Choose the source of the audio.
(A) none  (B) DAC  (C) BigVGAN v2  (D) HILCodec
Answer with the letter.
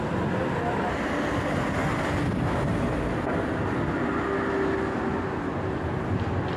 A